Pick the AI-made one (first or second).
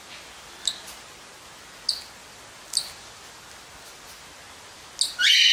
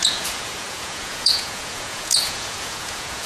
second